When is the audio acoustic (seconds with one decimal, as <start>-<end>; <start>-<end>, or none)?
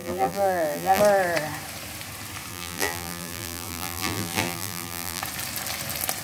1.0-2.5; 5.2-6.2